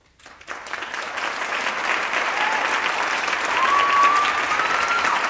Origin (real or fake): real